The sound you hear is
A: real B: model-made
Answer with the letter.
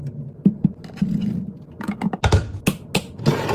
A